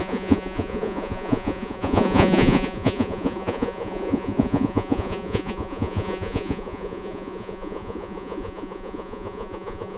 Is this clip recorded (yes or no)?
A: no